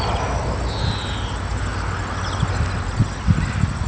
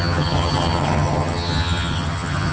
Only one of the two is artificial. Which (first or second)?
second